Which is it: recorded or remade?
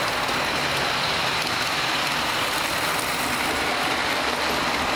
recorded